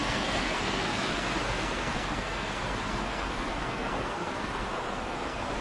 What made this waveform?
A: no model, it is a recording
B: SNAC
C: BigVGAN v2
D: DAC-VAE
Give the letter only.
B